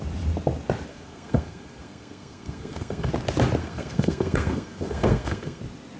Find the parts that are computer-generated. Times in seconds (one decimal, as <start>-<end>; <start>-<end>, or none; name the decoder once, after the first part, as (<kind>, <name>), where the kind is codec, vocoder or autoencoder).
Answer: 0.9-3.1 (codec, SNAC); 3.6-5.6